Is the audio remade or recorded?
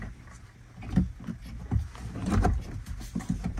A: recorded